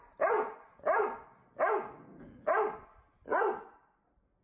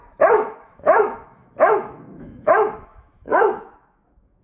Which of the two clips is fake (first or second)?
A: second